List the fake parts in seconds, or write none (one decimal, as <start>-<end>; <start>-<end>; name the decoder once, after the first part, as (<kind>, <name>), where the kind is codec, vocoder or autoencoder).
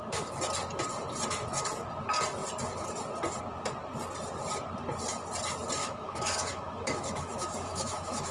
5.8-8.3 (autoencoder, DAC-VAE)